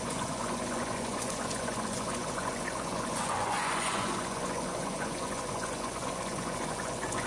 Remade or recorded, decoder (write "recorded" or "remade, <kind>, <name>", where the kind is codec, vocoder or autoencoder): remade, vocoder, Vocos